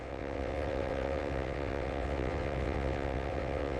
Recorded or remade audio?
remade